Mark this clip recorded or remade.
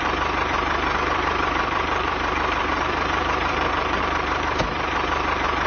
remade